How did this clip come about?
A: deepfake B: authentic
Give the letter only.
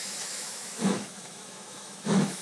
A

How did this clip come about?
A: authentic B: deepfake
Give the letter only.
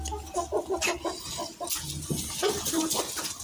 A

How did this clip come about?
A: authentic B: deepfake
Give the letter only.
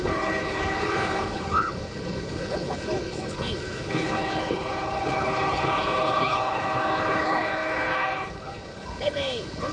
B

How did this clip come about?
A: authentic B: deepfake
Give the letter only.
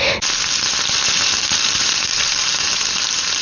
A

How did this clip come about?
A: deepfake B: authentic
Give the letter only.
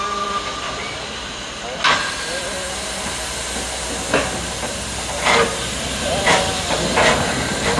B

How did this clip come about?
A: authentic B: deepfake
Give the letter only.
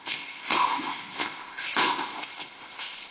B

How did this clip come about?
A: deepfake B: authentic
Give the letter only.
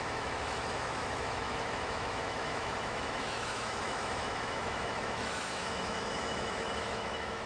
A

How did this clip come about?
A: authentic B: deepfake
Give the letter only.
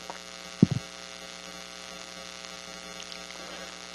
A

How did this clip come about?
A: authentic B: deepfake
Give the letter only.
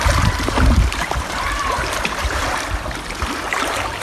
B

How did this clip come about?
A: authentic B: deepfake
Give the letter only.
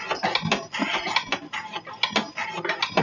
A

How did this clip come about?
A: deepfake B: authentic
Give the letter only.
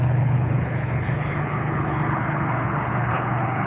A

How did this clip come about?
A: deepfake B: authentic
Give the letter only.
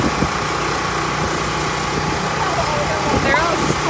B